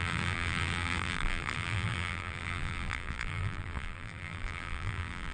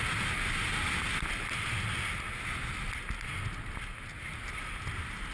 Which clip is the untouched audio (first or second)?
second